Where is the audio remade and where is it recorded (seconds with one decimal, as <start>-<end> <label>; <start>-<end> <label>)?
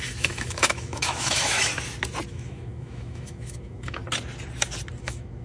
0.0-1.7 remade; 1.7-2.3 recorded; 2.3-4.0 remade; 4.0-5.0 recorded; 5.0-5.4 remade